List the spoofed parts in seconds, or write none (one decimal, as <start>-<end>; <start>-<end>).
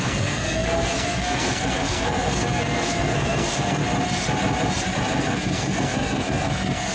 0.0-3.8; 5.2-6.9